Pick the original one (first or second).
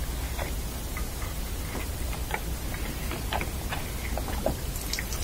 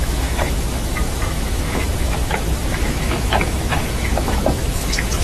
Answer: first